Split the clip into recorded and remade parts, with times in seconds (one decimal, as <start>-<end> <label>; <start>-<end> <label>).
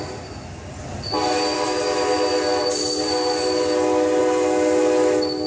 0.0-5.5 recorded